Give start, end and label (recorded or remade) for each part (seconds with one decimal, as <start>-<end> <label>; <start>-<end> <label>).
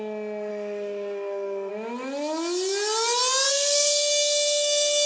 0.0-0.5 recorded; 0.5-1.7 remade; 1.7-3.5 recorded; 3.5-5.1 remade